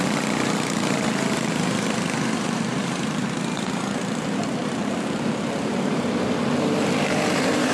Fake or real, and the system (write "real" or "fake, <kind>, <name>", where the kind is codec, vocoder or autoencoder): fake, vocoder, BigVGAN v2